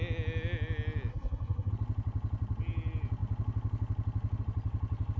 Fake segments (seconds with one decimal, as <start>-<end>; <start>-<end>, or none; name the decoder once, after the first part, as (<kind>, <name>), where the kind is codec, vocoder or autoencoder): 1.1-1.7 (codec, SNAC)